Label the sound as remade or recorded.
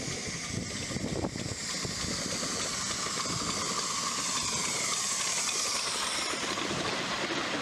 recorded